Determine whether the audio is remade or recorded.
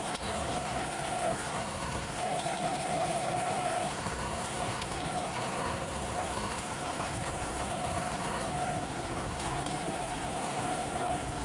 remade